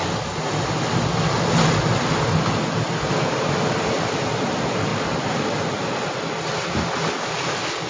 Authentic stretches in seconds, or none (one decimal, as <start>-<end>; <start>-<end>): 0.0-7.9